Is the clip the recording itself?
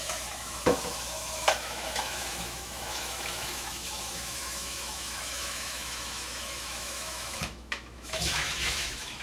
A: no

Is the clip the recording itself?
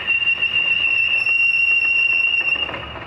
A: yes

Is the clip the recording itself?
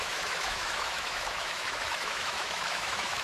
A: no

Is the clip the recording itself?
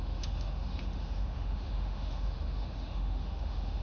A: no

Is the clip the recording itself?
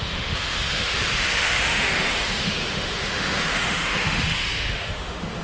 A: no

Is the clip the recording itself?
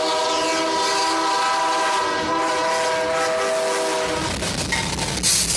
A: yes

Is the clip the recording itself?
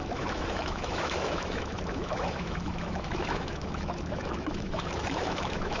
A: no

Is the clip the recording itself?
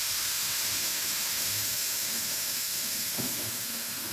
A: no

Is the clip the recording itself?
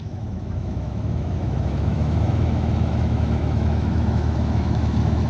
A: no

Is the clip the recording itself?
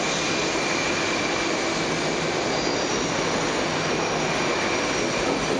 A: yes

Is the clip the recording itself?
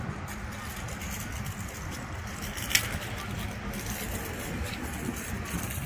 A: yes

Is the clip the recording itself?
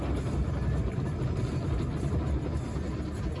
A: yes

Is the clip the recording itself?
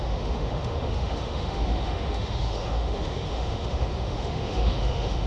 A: no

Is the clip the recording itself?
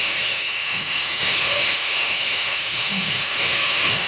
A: no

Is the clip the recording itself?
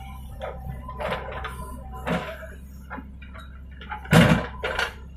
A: yes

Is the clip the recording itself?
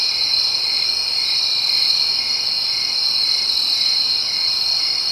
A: yes